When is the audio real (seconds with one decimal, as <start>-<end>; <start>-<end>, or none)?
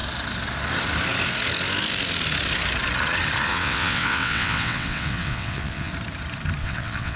0.0-3.5; 5.9-6.6